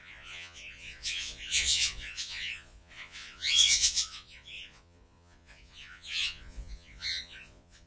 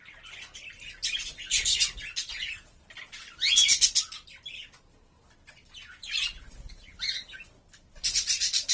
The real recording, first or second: second